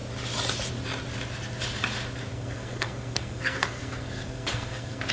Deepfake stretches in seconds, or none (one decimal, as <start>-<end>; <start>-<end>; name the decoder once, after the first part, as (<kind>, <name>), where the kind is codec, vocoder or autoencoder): 2.3-5.1 (codec, SNAC)